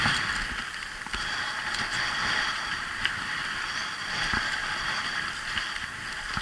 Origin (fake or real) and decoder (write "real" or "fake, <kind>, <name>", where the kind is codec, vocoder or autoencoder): real